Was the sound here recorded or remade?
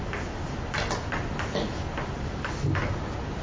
recorded